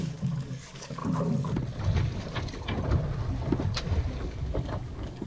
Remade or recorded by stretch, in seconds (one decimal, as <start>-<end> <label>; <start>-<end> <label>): 0.0-1.0 remade; 1.0-4.2 recorded; 4.2-5.3 remade